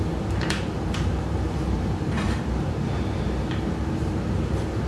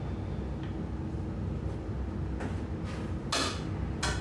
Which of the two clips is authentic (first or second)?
second